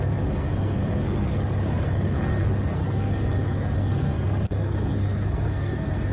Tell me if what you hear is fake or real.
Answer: fake